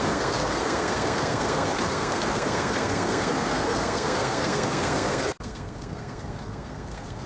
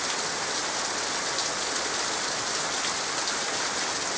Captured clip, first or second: second